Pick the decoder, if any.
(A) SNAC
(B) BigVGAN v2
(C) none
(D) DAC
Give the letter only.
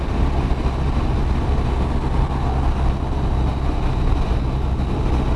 C